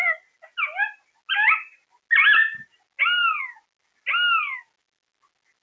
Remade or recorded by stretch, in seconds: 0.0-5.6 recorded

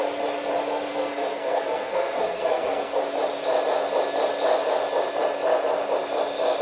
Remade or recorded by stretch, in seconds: 0.0-0.9 recorded; 0.9-3.0 remade; 3.0-6.6 recorded

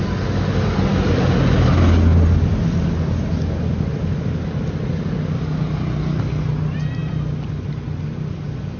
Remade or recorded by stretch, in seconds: 0.0-8.8 recorded

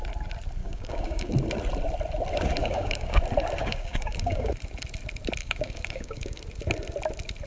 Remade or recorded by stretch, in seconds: 0.0-0.6 recorded; 0.6-1.3 remade; 1.3-2.6 recorded; 2.6-3.2 remade; 3.2-3.6 recorded; 3.6-4.5 remade; 4.5-5.4 recorded; 5.4-6.4 remade; 6.4-7.5 recorded